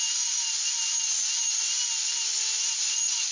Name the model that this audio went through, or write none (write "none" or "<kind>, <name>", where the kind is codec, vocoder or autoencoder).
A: none